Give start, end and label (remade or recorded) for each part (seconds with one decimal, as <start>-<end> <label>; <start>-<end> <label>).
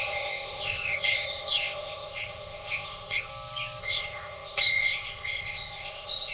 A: 0.0-3.3 remade; 3.3-3.8 recorded; 3.8-6.3 remade